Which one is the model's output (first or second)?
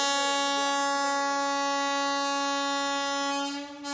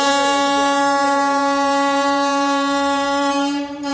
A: second